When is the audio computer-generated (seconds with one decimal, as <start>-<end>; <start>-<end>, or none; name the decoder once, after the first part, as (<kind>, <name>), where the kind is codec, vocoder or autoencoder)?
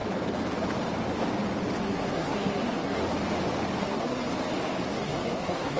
1.8-3.0 (codec, SNAC); 3.8-4.3; 4.9-5.8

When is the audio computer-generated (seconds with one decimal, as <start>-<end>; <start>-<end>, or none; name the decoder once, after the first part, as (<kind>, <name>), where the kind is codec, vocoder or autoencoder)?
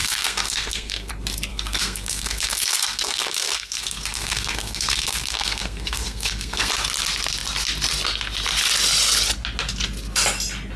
0.0-1.1 (codec, SNAC); 1.5-6.7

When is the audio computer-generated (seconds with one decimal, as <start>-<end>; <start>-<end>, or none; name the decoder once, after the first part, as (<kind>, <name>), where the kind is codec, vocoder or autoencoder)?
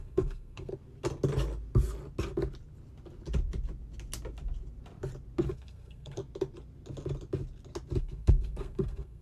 0.0-0.7 (codec, SNAC); 5.5-6.2; 8.0-9.2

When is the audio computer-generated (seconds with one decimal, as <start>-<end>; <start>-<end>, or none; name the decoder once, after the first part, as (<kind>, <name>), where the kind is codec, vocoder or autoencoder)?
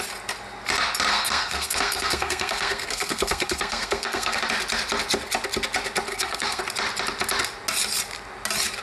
1.1-4.4 (codec, SNAC); 6.1-6.6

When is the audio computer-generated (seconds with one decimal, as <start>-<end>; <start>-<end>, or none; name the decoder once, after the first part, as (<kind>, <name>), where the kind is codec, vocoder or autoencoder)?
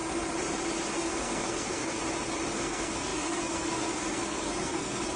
0.9-2.0 (codec, SNAC); 2.5-5.2